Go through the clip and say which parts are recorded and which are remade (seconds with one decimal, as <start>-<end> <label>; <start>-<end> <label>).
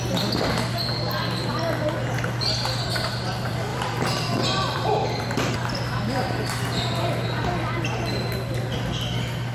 0.0-3.7 recorded; 3.7-5.5 remade; 5.5-9.5 recorded